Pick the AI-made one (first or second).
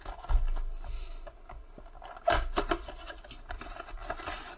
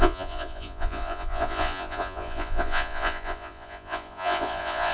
second